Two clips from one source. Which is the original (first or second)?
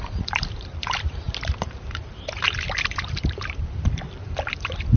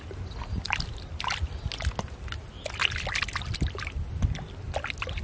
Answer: second